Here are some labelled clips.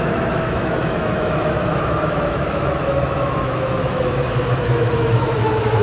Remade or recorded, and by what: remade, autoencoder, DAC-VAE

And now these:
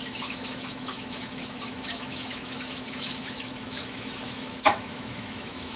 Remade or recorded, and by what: remade, autoencoder, DAC-VAE